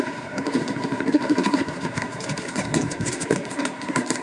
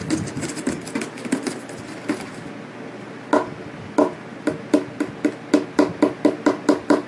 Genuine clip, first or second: second